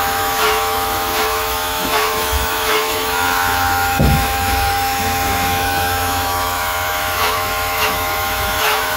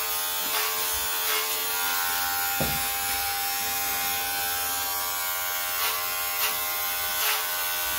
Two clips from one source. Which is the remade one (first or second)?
first